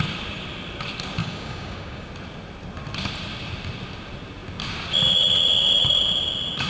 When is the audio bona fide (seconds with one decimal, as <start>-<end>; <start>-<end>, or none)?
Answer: 0.0-1.2; 2.1-6.7